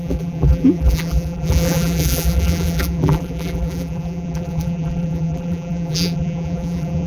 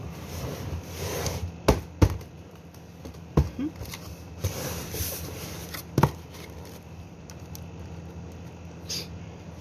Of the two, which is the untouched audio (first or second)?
second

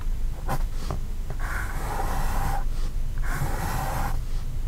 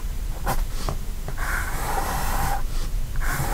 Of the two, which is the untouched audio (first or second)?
first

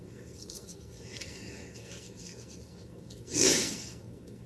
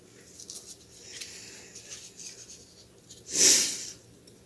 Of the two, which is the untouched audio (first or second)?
second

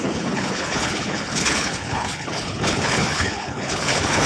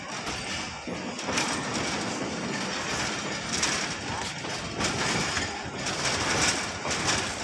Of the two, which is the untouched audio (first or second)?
second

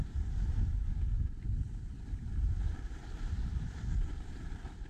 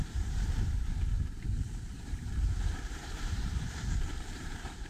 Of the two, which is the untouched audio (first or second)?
first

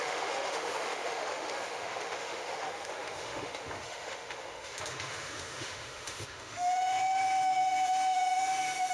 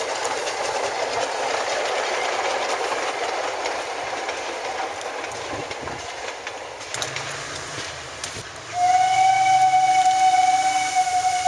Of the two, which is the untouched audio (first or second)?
second